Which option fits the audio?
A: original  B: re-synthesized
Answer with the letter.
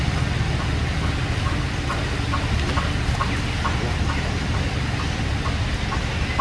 A